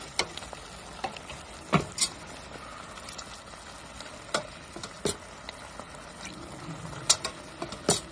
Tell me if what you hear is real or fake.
real